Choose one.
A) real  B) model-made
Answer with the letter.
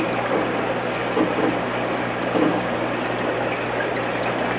A